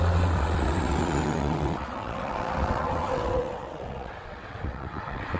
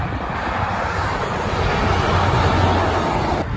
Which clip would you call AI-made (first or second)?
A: first